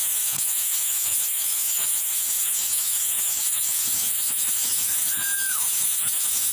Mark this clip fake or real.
fake